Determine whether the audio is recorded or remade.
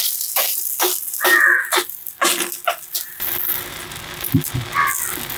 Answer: recorded